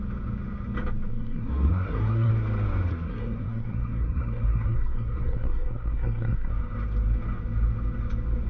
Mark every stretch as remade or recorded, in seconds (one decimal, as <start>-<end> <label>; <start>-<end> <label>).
0.0-1.1 recorded; 1.1-2.3 remade; 2.3-2.9 recorded; 2.9-6.5 remade; 6.5-8.5 recorded